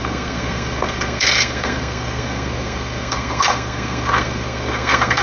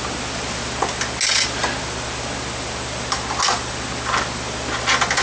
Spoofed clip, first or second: first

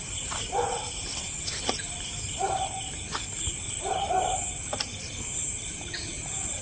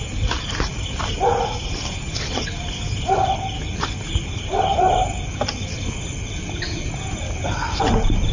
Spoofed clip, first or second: first